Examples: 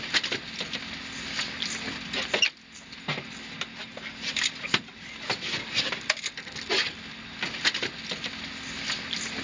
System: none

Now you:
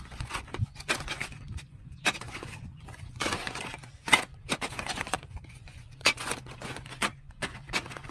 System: vocoder, Vocos